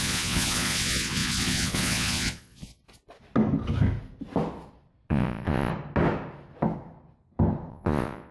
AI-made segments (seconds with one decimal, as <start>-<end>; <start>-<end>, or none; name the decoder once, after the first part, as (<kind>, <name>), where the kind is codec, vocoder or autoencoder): 0.0-2.8 (vocoder, Vocos); 5.1-5.7; 7.7-8.3